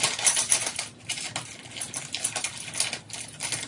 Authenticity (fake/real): real